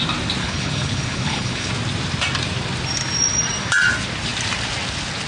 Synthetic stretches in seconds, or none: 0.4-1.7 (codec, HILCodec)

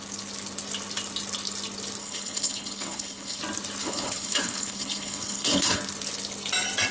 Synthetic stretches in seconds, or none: 2.0-3.4 (codec, HILCodec); 3.8-5.8

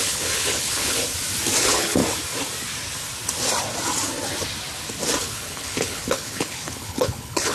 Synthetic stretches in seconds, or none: 0.0-1.1 (codec, HILCodec); 1.6-2.0; 5.2-7.5

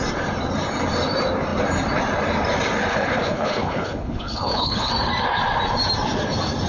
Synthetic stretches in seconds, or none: 2.9-4.9 (codec, HILCodec)

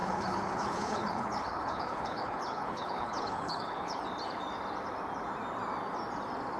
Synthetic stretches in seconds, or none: 0.0-4.0 (codec, HILCodec)

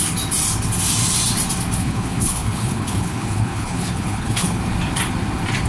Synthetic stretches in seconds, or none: 1.8-4.6 (codec, HILCodec)

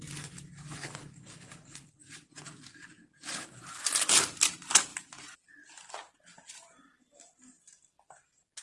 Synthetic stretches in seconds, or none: 0.8-1.9 (codec, HILCodec)